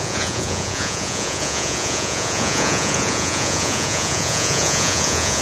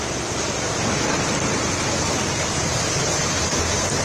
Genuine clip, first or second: second